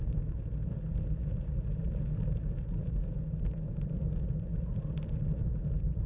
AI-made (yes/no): no